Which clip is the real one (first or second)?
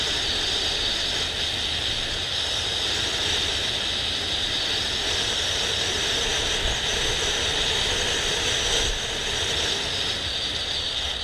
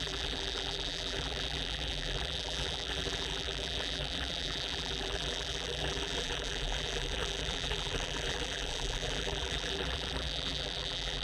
first